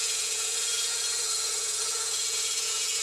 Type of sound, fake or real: fake